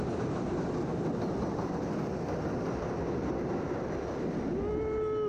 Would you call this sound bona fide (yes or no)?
yes